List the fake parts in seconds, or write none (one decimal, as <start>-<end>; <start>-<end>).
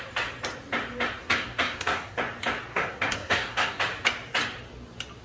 1.2-2.2; 2.7-3.8